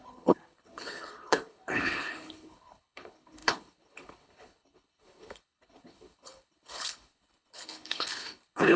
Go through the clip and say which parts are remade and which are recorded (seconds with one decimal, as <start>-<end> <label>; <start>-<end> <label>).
0.0-8.8 remade